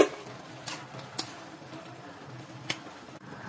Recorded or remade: recorded